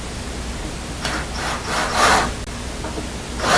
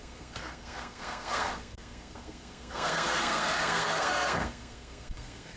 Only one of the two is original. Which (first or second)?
first